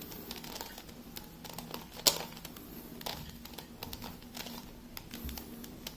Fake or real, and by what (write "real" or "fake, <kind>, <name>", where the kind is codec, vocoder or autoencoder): real